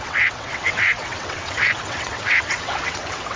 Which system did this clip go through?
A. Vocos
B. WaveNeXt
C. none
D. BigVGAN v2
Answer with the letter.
B